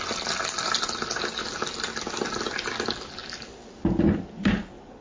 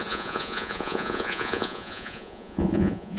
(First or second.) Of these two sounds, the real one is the first